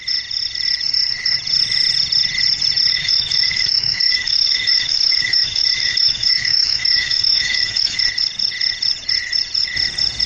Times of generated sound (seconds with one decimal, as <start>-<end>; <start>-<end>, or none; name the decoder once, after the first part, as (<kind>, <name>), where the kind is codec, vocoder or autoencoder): 2.9-8.0 (autoencoder, DAC-VAE)